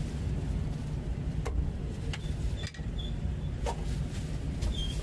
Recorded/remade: recorded